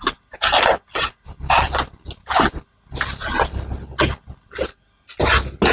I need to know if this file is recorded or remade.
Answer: recorded